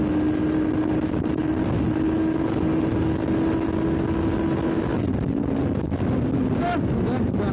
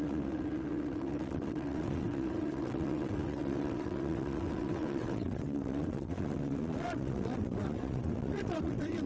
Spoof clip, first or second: second